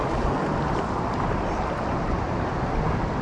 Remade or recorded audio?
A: recorded